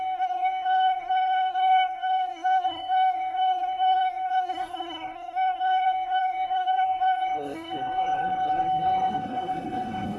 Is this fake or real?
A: fake